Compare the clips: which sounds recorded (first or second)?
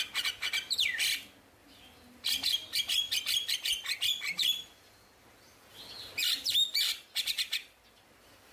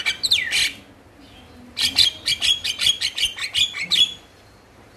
second